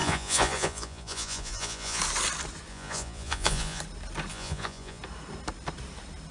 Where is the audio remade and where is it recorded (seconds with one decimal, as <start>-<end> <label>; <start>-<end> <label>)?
0.0-2.0 remade; 2.0-2.7 recorded; 2.7-3.8 remade; 3.8-4.3 recorded; 4.3-5.0 remade; 5.0-6.3 recorded